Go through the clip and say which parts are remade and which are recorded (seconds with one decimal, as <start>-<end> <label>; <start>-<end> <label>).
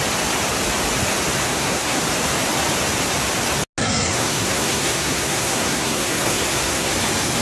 0.0-1.4 recorded; 1.4-2.0 remade; 2.0-3.8 recorded; 3.8-6.9 remade; 6.9-7.4 recorded